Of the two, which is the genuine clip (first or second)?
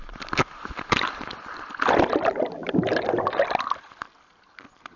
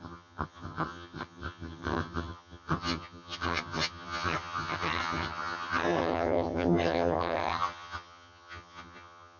first